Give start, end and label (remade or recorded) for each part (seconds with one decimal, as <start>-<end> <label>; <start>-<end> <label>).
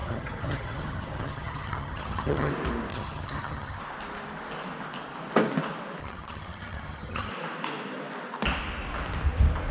0.0-2.5 remade; 2.5-2.9 recorded; 2.9-3.8 remade; 3.8-6.0 recorded; 6.0-7.3 remade; 7.3-9.7 recorded